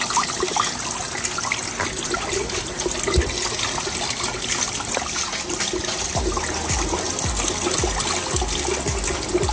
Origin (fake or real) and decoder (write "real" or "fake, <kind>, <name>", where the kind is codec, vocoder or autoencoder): real